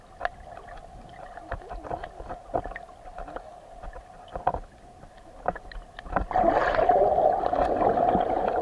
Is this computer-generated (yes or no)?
no